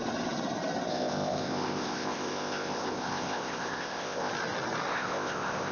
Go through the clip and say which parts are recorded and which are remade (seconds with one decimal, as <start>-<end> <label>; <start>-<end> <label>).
0.0-0.9 recorded; 0.9-4.3 remade; 4.3-4.9 recorded; 4.9-5.7 remade